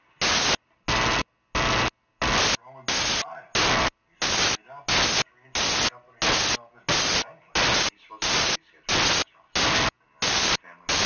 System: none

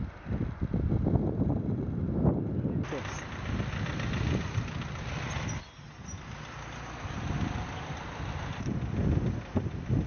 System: none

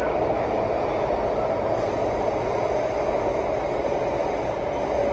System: none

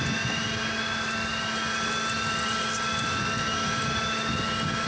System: none